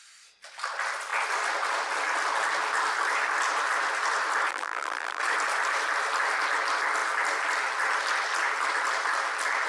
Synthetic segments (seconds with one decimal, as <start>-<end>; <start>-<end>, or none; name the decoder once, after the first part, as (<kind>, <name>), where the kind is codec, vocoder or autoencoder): 4.5-5.2 (vocoder, BigVGAN v2)